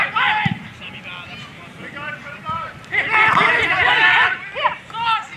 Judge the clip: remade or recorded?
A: remade